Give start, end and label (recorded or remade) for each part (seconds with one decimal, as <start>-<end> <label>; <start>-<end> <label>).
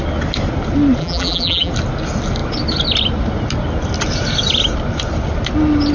0.0-1.0 recorded; 1.0-1.7 remade; 1.7-5.9 recorded